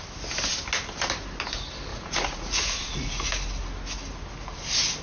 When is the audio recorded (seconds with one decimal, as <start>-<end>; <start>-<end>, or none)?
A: 0.0-1.9; 3.3-5.0